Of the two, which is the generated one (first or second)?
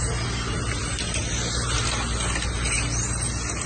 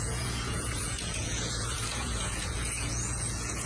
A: second